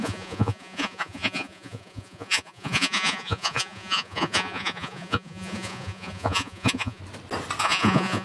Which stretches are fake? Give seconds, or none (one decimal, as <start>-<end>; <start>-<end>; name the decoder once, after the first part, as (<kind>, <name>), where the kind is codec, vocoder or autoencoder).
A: 0.0-7.0 (vocoder, Vocos); 7.6-8.2